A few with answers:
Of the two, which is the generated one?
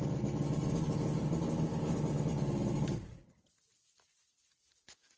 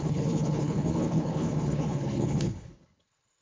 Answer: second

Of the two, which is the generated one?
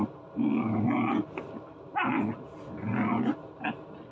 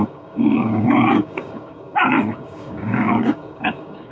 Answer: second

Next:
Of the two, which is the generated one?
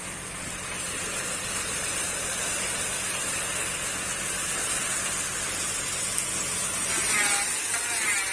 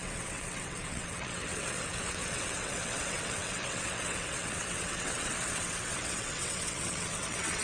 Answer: second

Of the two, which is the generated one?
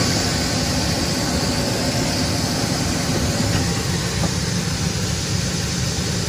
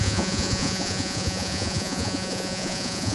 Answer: second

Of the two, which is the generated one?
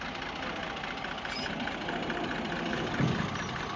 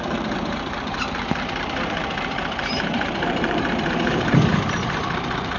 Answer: second